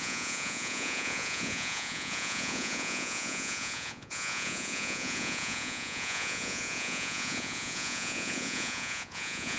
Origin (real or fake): fake